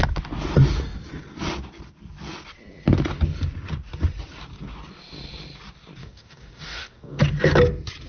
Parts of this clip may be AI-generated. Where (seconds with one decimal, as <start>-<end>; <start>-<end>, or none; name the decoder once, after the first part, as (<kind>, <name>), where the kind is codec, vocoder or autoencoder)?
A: 6.0-7.2 (codec, DAC)

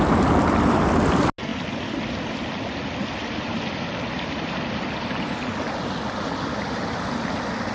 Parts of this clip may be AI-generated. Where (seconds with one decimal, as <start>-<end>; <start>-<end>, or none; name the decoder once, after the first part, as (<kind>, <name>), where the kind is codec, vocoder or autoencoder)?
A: none

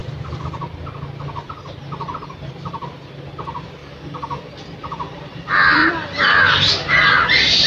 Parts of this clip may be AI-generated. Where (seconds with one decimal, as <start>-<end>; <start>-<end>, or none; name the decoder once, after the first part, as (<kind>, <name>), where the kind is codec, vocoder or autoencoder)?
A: 3.8-4.4 (codec, DAC)